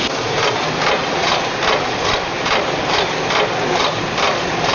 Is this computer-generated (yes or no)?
no